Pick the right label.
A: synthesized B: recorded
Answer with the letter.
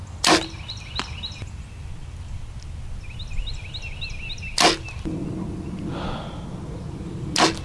B